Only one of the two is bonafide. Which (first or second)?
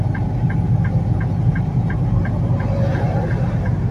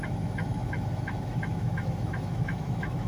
first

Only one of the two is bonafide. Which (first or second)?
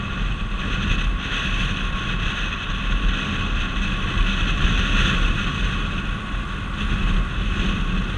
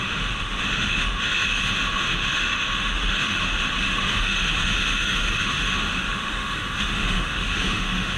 first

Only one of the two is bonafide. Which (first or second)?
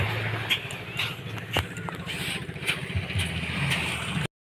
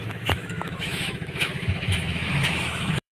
first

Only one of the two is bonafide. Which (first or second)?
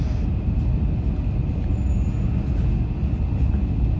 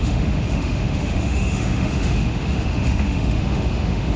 first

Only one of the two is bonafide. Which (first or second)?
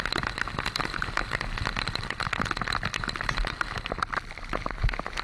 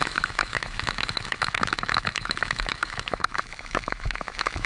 first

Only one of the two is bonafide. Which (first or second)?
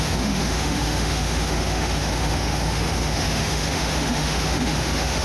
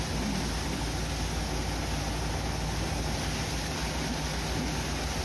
second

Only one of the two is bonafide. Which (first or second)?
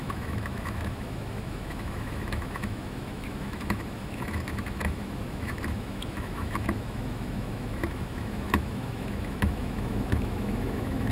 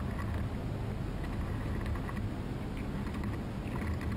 second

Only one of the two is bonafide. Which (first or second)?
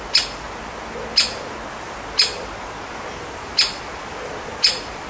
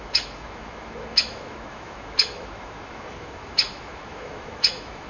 first